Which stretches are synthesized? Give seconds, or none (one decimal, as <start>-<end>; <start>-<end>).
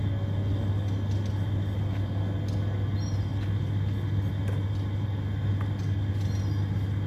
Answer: none